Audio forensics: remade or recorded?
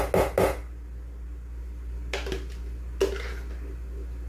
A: recorded